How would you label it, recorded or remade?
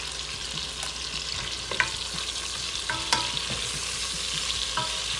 recorded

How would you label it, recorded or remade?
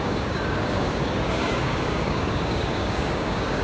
remade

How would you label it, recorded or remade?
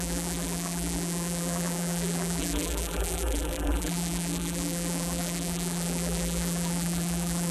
remade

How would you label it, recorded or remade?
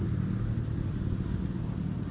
recorded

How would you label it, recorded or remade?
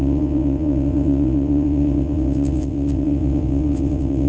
remade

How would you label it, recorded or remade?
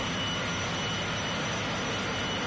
recorded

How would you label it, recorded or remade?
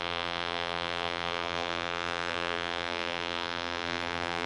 remade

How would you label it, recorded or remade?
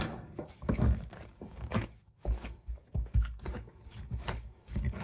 remade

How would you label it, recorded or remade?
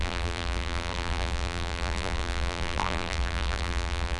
remade